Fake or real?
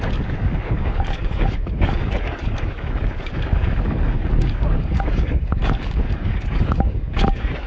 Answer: fake